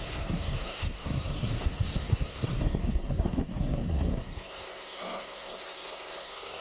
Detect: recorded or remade remade